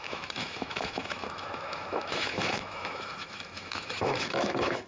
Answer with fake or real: fake